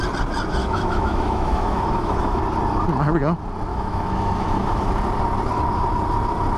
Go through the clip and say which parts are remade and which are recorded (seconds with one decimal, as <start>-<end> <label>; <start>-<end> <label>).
0.0-0.6 recorded; 0.6-2.4 remade; 2.4-3.7 recorded; 3.7-4.9 remade; 4.9-6.6 recorded